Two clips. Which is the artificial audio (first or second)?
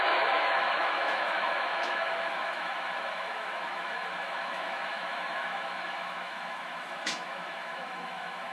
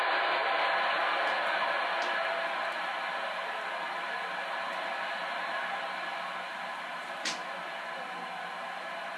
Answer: first